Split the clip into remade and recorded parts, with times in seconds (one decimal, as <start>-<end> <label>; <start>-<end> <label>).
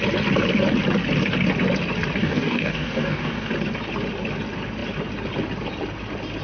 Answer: 0.0-2.2 recorded; 2.2-3.5 remade; 3.5-6.4 recorded